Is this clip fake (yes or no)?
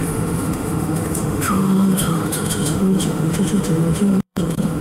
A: yes